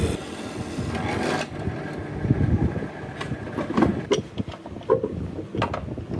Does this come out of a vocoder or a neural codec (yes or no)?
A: no